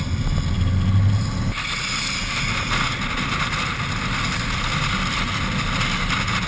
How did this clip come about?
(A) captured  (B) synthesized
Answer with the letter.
A